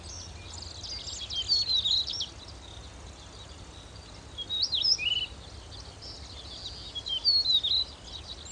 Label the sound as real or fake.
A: real